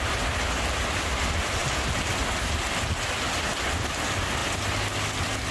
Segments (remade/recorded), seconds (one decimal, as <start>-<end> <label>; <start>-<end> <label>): 0.0-5.5 recorded